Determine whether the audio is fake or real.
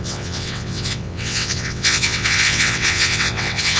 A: fake